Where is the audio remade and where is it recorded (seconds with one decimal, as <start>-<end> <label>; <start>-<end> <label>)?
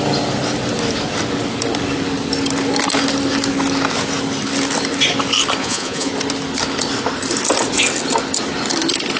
0.0-5.6 recorded; 5.6-6.1 remade; 6.1-9.2 recorded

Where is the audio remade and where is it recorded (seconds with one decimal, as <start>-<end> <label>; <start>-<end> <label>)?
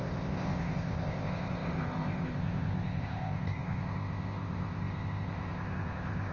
0.0-6.3 remade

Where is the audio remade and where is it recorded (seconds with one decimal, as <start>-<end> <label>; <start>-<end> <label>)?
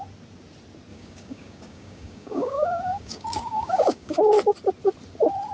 0.0-0.9 recorded; 0.9-4.2 remade; 4.2-5.5 recorded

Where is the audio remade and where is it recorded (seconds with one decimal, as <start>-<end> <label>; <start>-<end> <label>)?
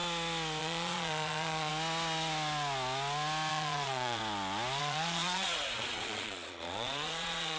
0.0-0.6 recorded; 0.6-1.7 remade; 1.7-3.5 recorded; 3.5-4.2 remade; 4.2-4.8 recorded; 4.8-7.6 remade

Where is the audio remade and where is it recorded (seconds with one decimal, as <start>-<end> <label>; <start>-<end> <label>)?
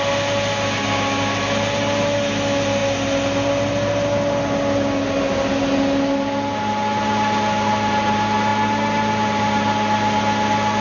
0.0-10.8 recorded